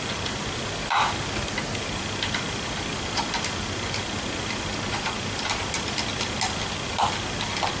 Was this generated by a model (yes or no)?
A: no